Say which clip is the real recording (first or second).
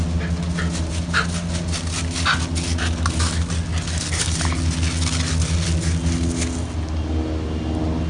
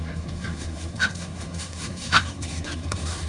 first